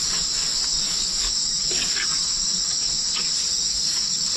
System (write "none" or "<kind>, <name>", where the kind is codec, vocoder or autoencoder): codec, DAC